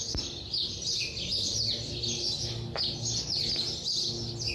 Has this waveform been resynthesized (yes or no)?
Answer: no